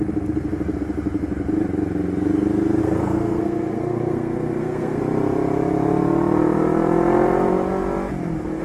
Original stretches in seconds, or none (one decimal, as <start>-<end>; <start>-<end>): 0.0-2.8; 5.0-8.6